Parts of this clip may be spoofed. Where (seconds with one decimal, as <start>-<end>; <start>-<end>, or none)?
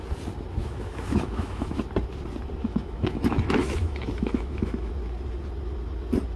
0.6-1.8; 2.6-4.9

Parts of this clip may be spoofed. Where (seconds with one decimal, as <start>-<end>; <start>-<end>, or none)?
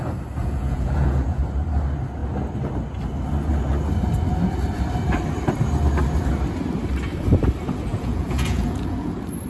0.4-1.4; 7.9-9.1